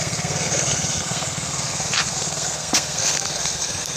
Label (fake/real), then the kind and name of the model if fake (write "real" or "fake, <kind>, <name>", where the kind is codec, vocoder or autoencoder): fake, codec, SNAC